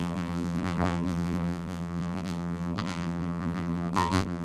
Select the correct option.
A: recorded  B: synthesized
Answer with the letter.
B